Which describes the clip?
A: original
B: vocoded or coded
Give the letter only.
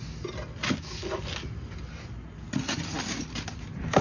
A